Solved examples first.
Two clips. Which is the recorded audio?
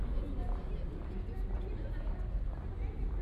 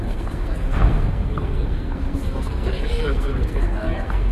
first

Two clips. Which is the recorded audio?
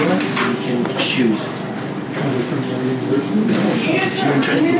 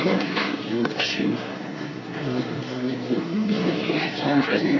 first